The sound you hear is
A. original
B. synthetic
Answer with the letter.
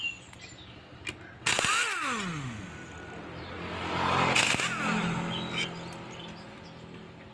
A